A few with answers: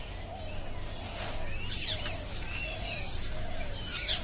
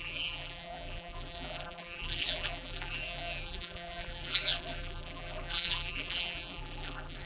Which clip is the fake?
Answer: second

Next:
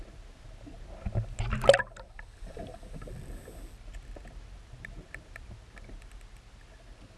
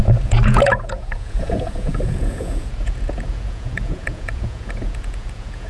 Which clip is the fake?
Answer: second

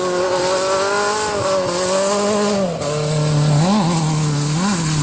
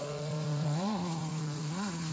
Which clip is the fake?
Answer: second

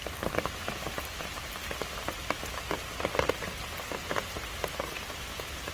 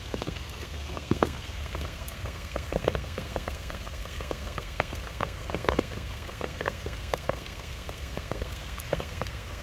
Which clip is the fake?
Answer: second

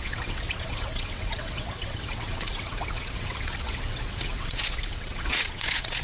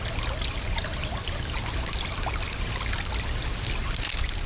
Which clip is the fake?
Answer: first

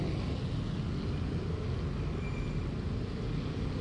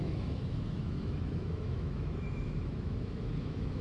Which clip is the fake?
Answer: second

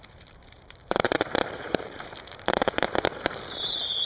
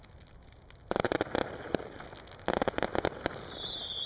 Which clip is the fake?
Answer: first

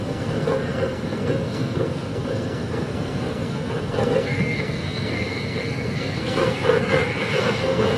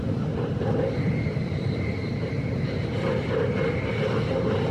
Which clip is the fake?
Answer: first